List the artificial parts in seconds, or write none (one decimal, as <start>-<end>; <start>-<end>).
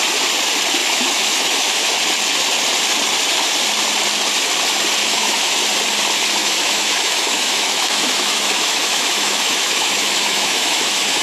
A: 0.8-1.9; 5.0-5.5; 6.4-11.2